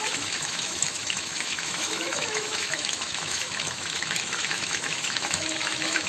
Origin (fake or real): fake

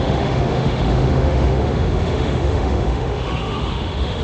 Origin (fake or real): fake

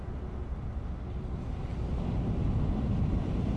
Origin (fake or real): real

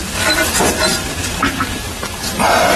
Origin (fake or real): real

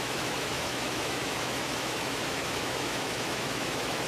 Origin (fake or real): fake